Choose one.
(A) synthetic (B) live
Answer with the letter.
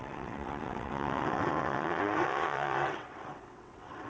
A